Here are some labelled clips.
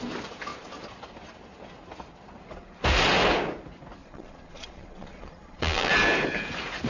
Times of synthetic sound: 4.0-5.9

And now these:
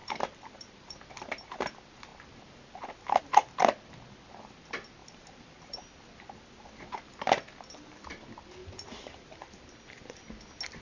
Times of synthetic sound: 0.0-1.1; 5.0-5.9; 8.6-10.2

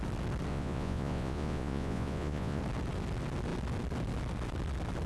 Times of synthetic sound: 0.5-2.6

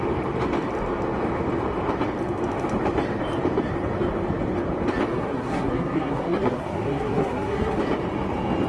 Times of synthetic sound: 5.1-7.8

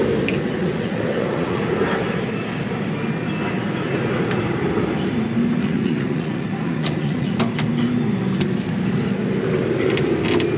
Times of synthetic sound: 0.6-1.6; 5.6-7.4

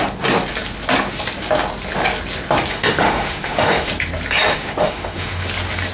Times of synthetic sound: 2.7-3.9; 4.5-5.5

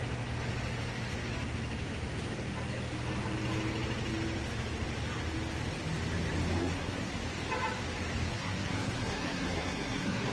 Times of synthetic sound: 6.6-7.1; 8.3-10.3

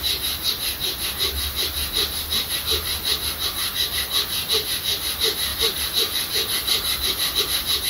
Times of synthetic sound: 5.5-7.4